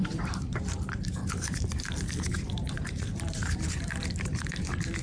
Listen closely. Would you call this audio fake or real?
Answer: fake